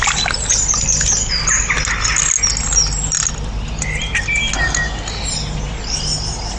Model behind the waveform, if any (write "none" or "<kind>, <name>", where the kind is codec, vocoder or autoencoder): none